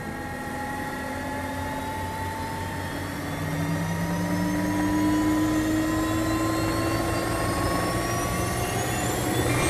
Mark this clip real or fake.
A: real